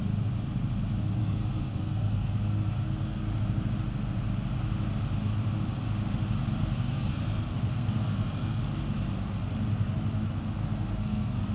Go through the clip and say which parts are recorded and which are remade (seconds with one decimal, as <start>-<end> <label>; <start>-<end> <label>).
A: 0.0-1.2 recorded; 1.2-3.2 remade; 3.2-6.6 recorded; 6.6-8.6 remade; 8.6-10.6 recorded; 10.6-11.5 remade

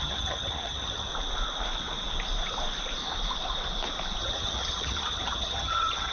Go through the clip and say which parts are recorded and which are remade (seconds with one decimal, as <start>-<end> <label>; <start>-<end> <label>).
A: 0.0-1.1 remade; 1.1-4.2 recorded; 4.2-6.1 remade

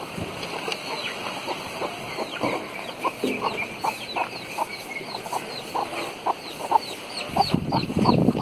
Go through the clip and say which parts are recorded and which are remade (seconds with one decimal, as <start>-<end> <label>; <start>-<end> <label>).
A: 0.0-0.7 recorded; 0.7-1.4 remade; 1.4-8.4 recorded

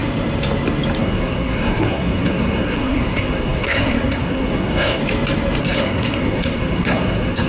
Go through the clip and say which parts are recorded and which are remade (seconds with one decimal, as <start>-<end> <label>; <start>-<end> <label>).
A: 0.0-1.0 recorded; 1.0-5.0 remade; 5.0-5.6 recorded; 5.6-7.5 remade

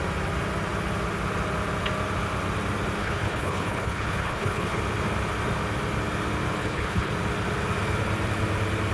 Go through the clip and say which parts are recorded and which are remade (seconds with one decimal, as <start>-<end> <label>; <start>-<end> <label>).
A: 0.0-3.0 recorded; 3.0-4.8 remade; 4.8-6.6 recorded; 6.6-7.1 remade; 7.1-8.9 recorded

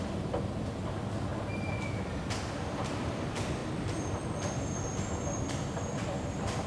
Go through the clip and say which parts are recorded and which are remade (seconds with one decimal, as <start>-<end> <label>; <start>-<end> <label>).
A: 0.0-1.3 remade; 1.3-1.9 recorded; 1.9-6.7 remade

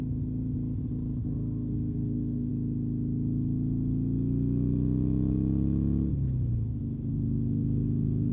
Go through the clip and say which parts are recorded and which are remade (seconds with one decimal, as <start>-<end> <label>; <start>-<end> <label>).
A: 0.0-1.2 recorded; 1.2-2.5 remade; 2.5-7.1 recorded; 7.1-8.3 remade